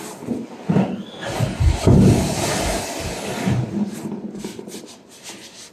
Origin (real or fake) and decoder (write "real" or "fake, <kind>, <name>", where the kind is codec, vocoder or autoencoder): real